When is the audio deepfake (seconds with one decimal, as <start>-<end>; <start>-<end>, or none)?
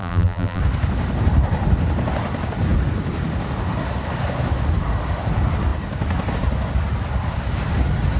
0.0-0.6